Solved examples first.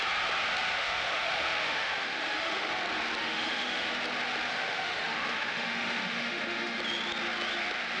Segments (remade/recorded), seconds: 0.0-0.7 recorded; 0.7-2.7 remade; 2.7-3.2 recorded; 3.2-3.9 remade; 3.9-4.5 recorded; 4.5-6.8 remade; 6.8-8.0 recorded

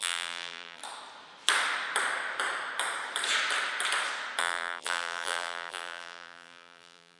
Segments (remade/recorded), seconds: 0.0-0.8 remade; 0.8-4.4 recorded; 4.4-7.2 remade

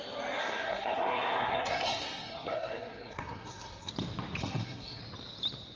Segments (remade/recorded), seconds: 0.0-0.4 recorded; 0.4-3.9 remade; 3.9-4.4 recorded; 4.4-5.0 remade; 5.0-5.8 recorded

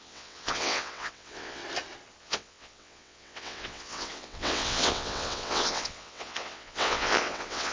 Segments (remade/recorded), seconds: 0.0-1.6 remade; 1.6-2.2 recorded; 2.2-7.7 remade

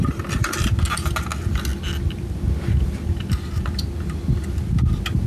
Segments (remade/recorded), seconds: 0.0-5.3 recorded